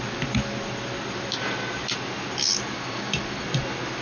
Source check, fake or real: real